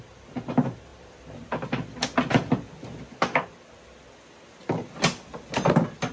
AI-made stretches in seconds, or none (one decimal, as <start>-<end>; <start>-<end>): none